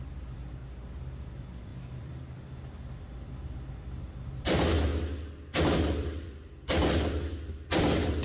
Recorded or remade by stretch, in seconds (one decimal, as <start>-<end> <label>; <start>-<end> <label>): 0.0-0.6 remade; 0.6-1.2 recorded; 1.2-4.9 remade; 4.9-5.6 recorded; 5.6-8.2 remade